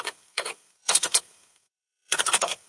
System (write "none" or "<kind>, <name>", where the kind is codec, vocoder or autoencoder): codec, SNAC